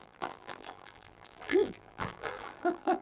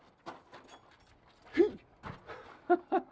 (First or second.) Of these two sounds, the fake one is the first